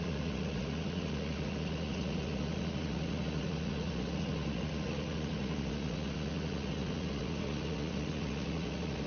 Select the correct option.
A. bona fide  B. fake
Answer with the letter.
B